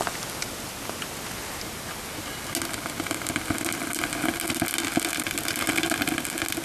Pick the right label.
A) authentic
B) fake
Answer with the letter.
A